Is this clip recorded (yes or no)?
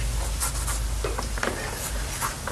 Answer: yes